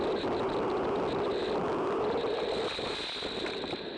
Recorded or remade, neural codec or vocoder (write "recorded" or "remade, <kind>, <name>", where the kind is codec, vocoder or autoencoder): recorded